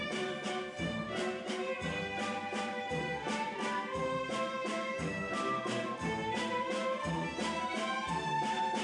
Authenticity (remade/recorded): remade